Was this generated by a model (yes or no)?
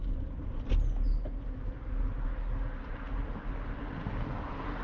no